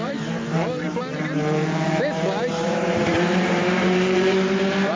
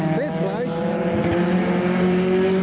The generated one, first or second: first